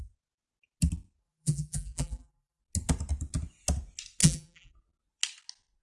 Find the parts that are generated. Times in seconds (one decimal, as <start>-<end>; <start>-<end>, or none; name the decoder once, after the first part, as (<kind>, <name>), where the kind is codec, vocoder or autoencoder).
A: 1.2-2.6 (vocoder, BigVGAN v2); 4.2-4.7